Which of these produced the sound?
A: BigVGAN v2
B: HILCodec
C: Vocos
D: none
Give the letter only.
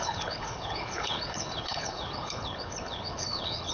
B